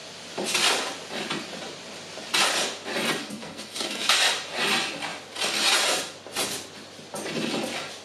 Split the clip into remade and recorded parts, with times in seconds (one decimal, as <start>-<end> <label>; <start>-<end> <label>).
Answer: 0.0-3.2 recorded; 3.2-4.3 remade; 4.3-8.0 recorded